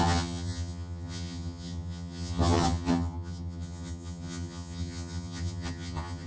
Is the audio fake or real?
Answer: fake